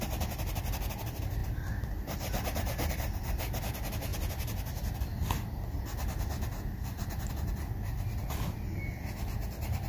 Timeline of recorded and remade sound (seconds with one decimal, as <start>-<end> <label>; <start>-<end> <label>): 0.0-9.9 recorded